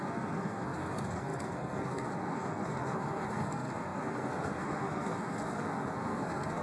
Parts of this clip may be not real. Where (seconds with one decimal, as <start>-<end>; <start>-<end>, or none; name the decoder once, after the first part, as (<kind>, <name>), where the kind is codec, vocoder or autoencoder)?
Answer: 0.0-6.6 (codec, SNAC)